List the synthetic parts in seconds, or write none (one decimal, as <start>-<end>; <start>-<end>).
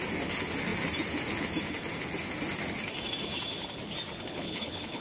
4.1-5.0